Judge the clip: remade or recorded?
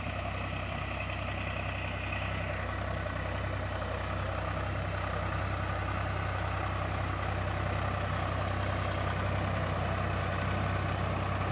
recorded